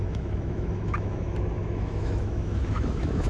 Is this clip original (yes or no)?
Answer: no